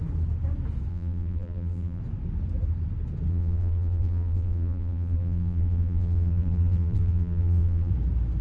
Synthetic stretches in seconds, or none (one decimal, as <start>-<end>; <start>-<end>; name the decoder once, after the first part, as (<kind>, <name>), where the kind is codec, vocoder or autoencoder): 0.9-2.0 (vocoder, BigVGAN v2); 3.3-7.9